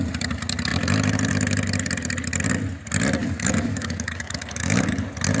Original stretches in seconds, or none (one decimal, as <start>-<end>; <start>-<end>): 0.0-3.2; 5.0-5.4